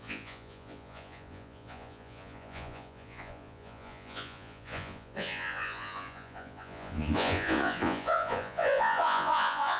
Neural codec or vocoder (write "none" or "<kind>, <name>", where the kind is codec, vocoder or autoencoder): vocoder, Vocos